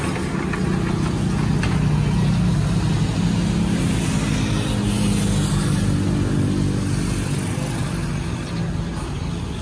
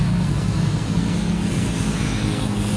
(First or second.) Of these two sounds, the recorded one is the first